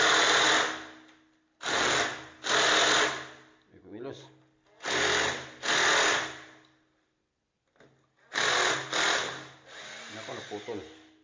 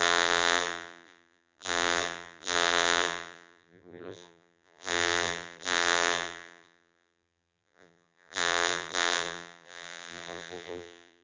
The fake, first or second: second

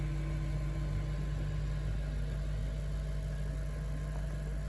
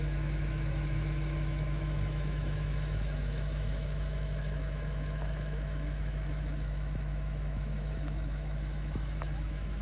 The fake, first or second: second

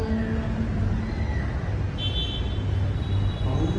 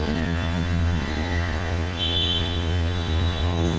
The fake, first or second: second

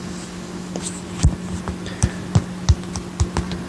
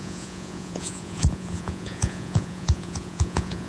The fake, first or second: second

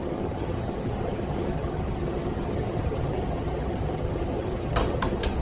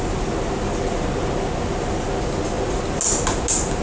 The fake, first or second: first